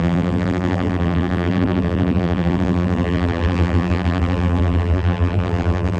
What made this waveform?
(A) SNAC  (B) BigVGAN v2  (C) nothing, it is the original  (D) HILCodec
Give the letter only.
B